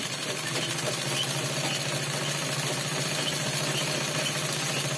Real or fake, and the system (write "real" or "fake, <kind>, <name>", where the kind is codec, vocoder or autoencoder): real